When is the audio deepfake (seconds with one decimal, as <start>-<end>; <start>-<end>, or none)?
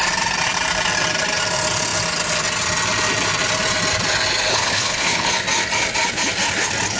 4.5-5.3